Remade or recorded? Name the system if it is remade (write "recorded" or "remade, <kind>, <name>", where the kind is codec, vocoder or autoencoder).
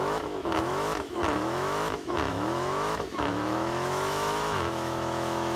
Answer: remade, autoencoder, DAC-VAE